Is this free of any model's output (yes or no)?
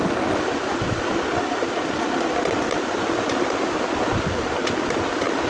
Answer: yes